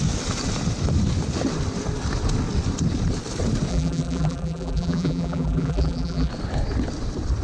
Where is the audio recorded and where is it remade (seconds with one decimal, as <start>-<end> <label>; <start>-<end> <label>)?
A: 0.0-3.7 recorded; 3.7-6.3 remade; 6.3-7.4 recorded